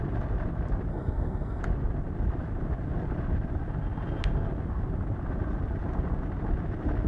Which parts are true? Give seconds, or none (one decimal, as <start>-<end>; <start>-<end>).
0.0-0.9; 1.6-7.1